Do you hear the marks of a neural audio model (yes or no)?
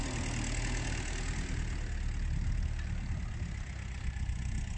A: no